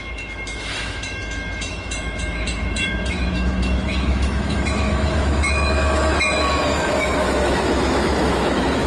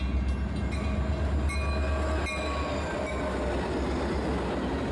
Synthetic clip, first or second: first